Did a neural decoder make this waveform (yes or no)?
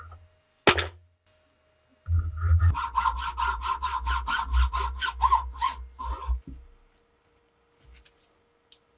no